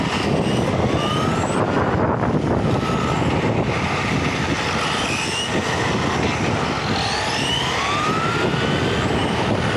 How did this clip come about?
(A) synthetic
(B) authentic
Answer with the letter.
B